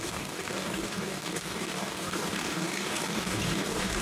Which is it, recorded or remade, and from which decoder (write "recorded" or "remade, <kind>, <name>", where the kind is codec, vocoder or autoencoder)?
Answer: remade, codec, DAC